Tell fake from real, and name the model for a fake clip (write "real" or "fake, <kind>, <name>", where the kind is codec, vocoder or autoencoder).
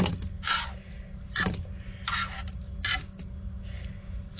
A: real